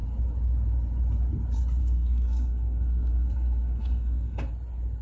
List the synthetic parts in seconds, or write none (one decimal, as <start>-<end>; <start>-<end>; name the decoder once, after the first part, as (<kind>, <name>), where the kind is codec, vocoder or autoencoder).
1.8-4.5 (codec, SNAC)